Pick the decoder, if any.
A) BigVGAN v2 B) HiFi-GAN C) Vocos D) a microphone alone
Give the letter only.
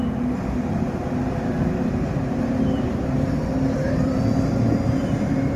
A